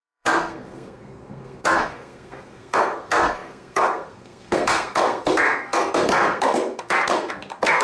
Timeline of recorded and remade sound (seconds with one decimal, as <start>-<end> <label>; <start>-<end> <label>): 0.0-7.8 remade